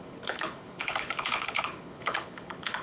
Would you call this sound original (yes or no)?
no